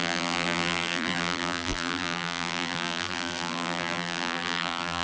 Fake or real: fake